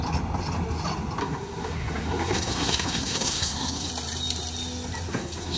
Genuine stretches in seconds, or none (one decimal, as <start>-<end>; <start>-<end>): 0.0-1.2; 3.9-5.1